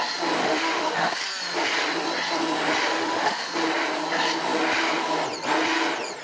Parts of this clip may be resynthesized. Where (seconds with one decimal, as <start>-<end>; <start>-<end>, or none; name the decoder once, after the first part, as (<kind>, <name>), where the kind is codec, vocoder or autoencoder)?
0.4-1.2 (autoencoder, DAC-VAE); 2.9-3.5